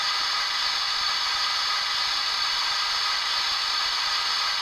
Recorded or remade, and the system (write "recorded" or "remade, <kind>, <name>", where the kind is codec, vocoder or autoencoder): recorded